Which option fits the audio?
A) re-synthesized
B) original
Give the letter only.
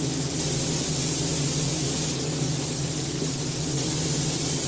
B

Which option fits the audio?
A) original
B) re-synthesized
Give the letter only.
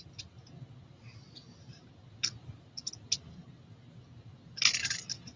A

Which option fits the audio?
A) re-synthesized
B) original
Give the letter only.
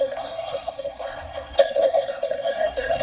A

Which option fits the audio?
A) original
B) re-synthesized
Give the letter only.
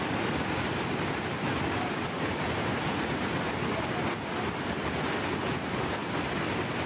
A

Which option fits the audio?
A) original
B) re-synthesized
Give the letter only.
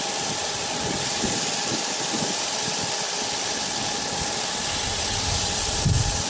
A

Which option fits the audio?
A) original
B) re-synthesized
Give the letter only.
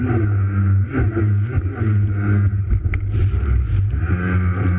A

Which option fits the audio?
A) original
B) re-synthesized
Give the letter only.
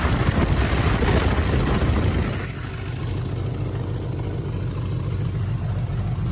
A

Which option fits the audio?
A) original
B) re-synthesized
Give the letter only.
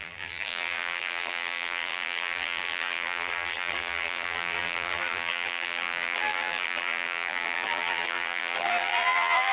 B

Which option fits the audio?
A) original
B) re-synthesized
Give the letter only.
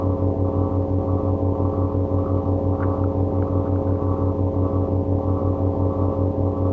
A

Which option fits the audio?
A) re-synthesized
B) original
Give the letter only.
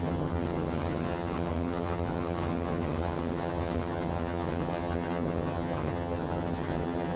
A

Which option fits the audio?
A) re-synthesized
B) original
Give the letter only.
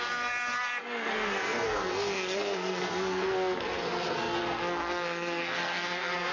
A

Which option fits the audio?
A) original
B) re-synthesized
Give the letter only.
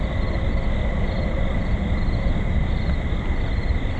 A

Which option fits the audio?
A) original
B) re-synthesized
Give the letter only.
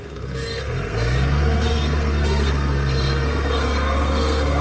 B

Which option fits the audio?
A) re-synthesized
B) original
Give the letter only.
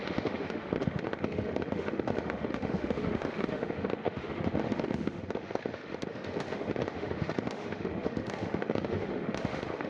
A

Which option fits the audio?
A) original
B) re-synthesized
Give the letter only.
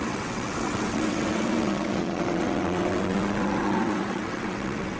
B